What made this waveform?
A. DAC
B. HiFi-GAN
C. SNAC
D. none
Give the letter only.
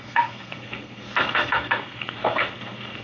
C